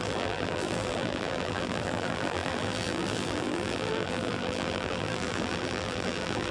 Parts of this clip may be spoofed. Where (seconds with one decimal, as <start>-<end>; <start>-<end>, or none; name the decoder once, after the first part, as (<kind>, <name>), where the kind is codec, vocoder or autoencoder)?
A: 0.0-6.5 (vocoder, BigVGAN v2)